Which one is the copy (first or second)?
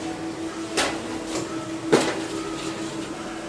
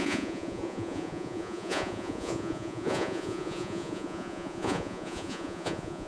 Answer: second